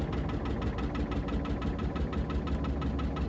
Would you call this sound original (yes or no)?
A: yes